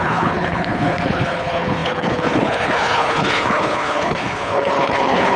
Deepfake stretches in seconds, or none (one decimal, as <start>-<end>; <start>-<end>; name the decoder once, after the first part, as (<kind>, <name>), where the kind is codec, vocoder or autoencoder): 0.0-5.4 (codec, HILCodec)